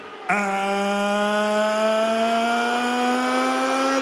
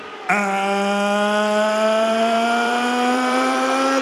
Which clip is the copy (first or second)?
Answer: second